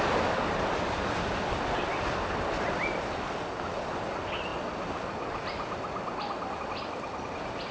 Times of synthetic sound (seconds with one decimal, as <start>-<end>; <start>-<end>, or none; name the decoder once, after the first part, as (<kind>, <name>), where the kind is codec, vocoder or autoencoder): none